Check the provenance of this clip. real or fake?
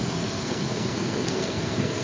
fake